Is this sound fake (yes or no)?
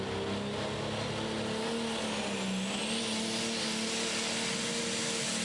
no